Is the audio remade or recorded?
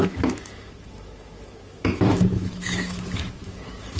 remade